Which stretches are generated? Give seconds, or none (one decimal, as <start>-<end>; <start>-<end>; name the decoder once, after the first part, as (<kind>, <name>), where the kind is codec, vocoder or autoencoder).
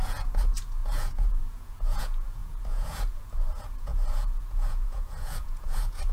0.0-6.1 (vocoder, Vocos)